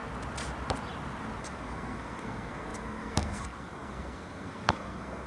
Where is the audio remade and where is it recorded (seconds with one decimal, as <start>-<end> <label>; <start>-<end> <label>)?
0.0-1.4 recorded; 1.4-5.3 remade

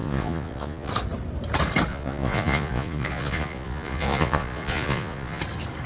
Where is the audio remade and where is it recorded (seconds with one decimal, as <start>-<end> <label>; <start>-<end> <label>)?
0.0-0.9 remade; 0.9-1.9 recorded; 1.9-5.4 remade; 5.4-5.9 recorded

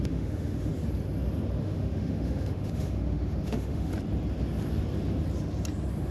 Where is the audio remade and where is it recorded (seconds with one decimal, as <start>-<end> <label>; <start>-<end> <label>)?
0.0-0.7 remade; 0.7-1.6 recorded; 1.6-3.9 remade; 3.9-6.1 recorded

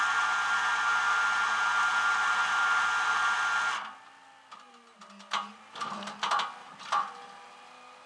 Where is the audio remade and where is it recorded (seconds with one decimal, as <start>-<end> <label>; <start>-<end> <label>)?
0.0-8.1 recorded

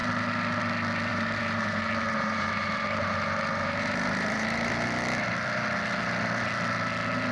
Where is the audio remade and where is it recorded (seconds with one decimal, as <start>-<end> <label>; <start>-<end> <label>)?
0.0-1.1 recorded; 1.1-4.7 remade; 4.7-7.3 recorded